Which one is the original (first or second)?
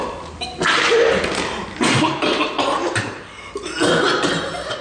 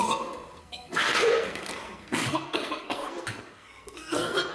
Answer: first